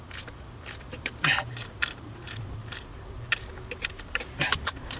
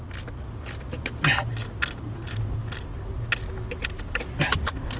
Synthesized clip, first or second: first